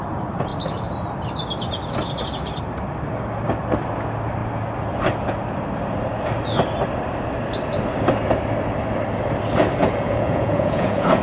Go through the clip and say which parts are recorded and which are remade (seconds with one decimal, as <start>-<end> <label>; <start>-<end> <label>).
0.0-9.8 recorded; 9.8-11.2 remade